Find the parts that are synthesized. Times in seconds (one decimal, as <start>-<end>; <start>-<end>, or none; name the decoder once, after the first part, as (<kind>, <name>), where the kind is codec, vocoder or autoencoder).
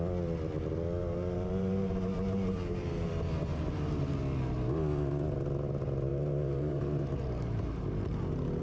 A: 1.0-4.2 (vocoder, BigVGAN v2); 6.1-7.8